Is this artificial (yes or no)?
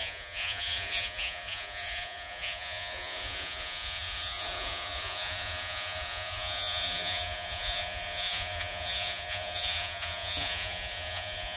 yes